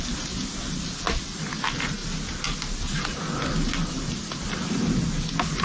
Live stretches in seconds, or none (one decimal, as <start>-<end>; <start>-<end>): 0.0-5.6